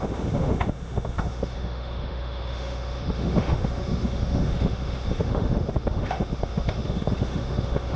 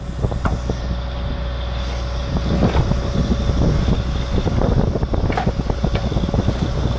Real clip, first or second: second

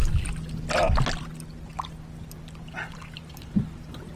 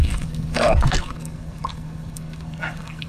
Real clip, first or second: first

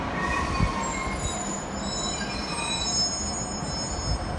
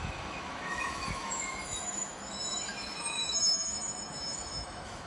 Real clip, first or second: first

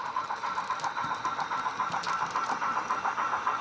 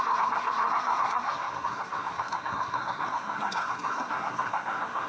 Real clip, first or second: first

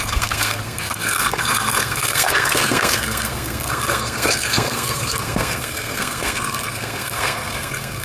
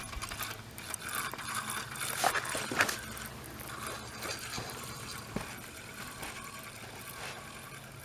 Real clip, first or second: second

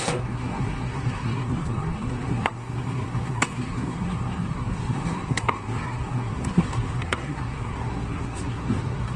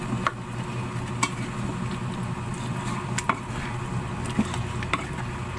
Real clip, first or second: second